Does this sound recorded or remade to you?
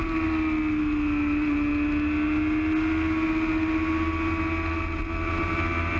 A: recorded